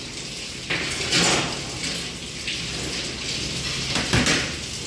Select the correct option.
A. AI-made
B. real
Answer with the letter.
B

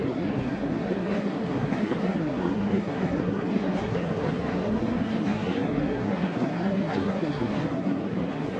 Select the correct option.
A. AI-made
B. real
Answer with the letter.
A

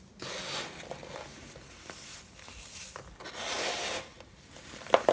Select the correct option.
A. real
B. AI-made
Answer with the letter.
A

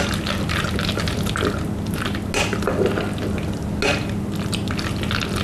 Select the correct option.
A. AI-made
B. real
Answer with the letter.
B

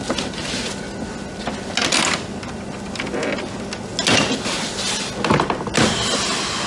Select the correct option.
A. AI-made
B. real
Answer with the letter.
B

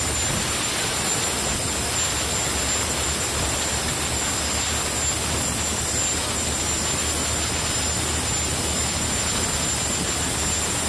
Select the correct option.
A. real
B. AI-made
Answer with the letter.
A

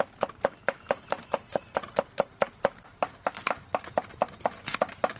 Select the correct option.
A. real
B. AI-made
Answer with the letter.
A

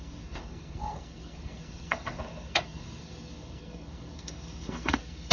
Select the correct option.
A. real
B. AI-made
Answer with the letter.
B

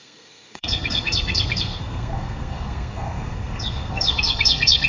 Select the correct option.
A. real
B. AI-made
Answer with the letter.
B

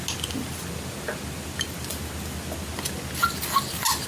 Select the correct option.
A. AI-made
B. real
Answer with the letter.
B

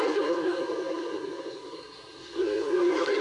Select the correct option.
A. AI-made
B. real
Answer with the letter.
A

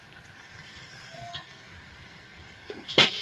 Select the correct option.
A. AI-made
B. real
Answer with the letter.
A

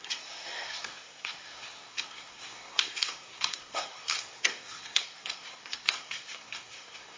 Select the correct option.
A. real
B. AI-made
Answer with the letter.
B